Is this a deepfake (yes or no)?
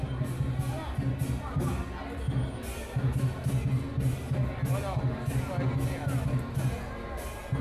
no